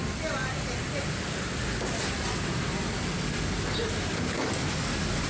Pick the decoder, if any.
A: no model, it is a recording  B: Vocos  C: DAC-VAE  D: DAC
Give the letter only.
A